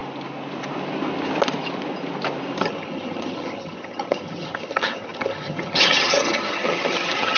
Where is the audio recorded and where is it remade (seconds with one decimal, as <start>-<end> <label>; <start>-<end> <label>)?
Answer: 0.0-2.6 recorded; 2.6-7.4 remade